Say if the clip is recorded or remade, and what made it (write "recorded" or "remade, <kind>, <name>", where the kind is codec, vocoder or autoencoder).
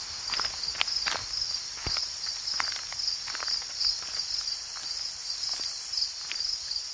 recorded